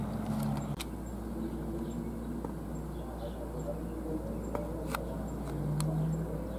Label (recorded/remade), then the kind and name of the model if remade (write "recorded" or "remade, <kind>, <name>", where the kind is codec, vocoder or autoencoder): recorded